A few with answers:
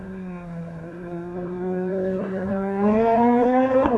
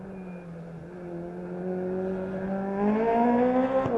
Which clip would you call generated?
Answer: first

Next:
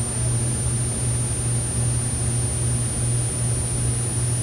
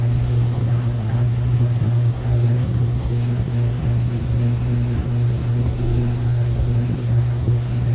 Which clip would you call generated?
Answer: second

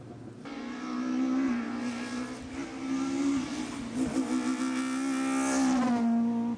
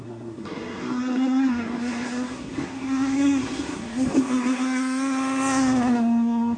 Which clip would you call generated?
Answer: second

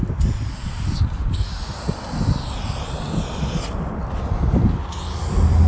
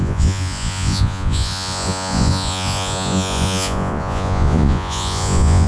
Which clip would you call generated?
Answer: second